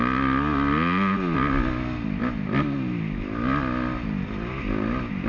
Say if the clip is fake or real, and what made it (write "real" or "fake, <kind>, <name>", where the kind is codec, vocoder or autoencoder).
real